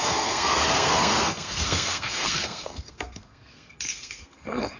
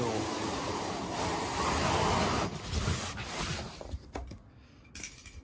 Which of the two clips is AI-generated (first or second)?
first